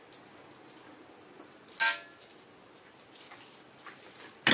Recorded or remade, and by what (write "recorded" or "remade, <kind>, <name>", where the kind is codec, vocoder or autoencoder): recorded